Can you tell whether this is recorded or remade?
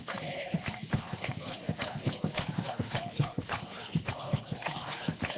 remade